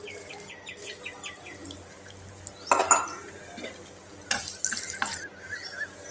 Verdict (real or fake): real